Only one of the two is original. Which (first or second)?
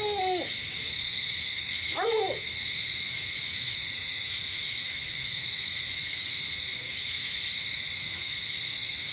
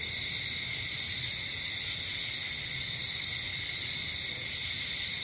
second